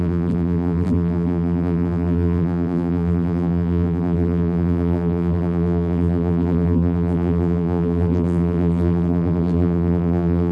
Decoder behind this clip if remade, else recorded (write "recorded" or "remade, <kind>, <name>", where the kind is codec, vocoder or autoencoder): remade, vocoder, BigVGAN v2